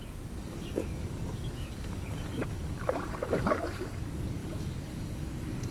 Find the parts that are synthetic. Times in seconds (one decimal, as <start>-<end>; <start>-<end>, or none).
0.0-5.7